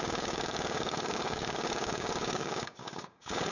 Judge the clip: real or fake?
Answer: fake